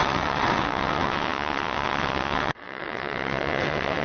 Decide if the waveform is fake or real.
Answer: fake